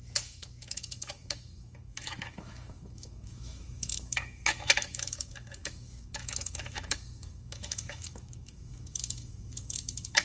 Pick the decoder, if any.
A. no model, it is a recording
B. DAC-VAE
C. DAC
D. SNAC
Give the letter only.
B